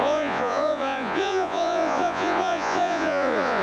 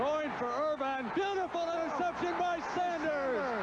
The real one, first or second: second